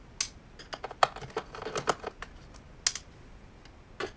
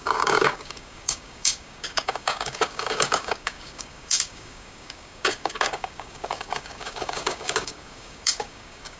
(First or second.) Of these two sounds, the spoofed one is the second